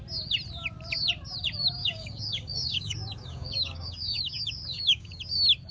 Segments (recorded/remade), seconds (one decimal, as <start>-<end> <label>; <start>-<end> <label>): 0.0-1.8 recorded; 1.8-5.2 remade; 5.2-5.7 recorded